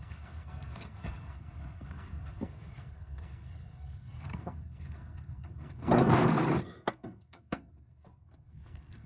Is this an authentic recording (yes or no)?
no